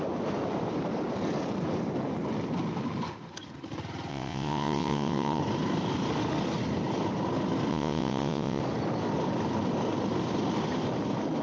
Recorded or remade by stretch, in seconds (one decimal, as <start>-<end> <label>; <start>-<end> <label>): 0.0-4.1 recorded; 4.1-5.4 remade; 5.4-7.7 recorded; 7.7-8.6 remade; 8.6-11.4 recorded

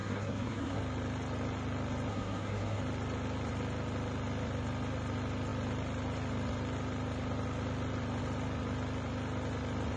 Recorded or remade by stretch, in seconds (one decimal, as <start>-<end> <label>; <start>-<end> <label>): 0.0-0.8 remade; 0.8-2.1 recorded; 2.1-2.8 remade; 2.8-10.0 recorded

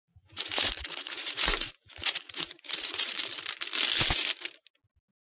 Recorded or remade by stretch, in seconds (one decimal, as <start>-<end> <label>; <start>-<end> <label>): 0.0-3.2 remade; 3.2-5.3 recorded